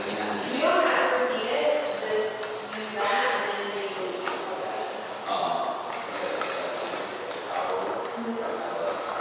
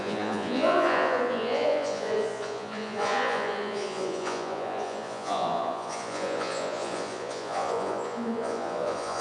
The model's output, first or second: second